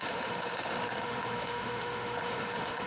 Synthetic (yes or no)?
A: yes